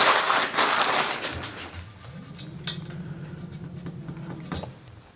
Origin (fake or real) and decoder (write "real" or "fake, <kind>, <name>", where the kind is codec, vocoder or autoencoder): real